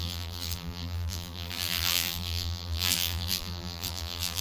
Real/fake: fake